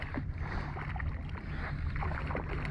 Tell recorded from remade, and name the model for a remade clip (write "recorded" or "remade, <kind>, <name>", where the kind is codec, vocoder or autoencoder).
recorded